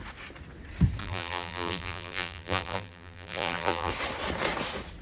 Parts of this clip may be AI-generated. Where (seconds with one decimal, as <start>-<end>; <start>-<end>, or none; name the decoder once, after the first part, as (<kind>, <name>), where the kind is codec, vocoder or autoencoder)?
1.0-3.9 (vocoder, BigVGAN v2)